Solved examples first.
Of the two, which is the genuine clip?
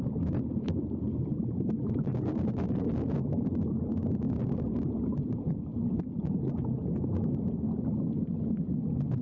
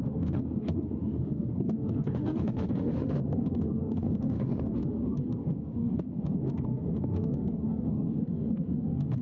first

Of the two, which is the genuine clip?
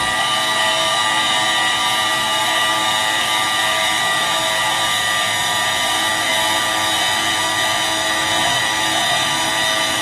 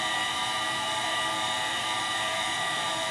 first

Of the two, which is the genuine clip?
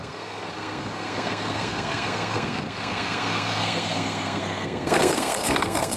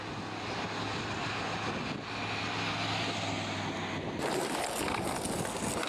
second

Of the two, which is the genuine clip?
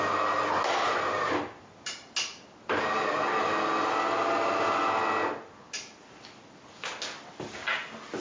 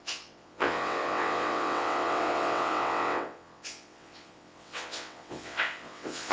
first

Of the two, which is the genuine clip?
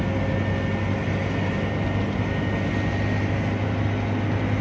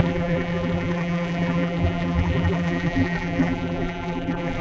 first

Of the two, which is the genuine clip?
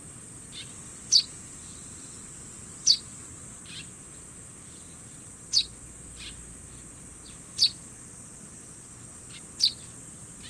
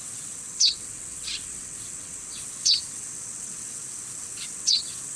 first